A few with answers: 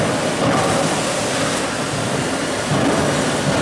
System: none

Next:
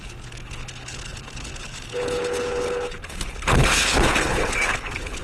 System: codec, HILCodec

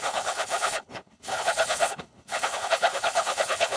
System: codec, HILCodec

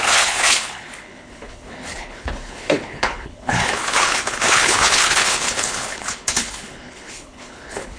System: codec, HILCodec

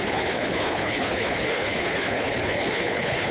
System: codec, HILCodec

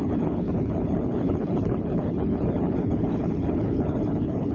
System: codec, HILCodec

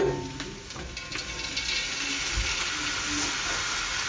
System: none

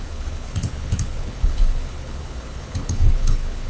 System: codec, HILCodec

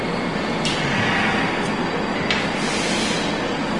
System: none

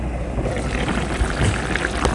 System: none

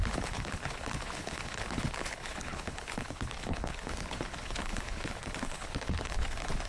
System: codec, HILCodec